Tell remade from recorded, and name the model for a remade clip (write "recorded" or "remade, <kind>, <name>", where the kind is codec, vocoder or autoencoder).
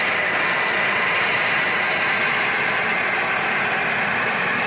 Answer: recorded